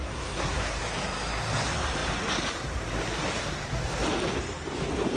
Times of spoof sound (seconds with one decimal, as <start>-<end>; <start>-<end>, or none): 0.0-0.8